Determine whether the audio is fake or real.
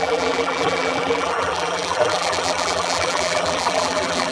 fake